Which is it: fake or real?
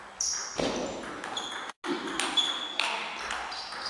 real